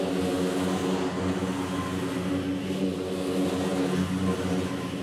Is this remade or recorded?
recorded